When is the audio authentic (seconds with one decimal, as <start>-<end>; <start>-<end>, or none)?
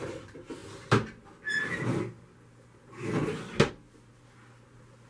0.0-5.1